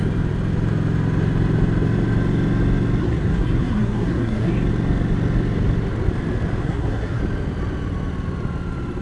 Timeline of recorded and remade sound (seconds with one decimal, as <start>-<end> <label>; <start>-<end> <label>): 0.0-3.0 recorded; 3.0-4.5 remade; 4.5-6.6 recorded; 6.6-7.2 remade; 7.2-9.0 recorded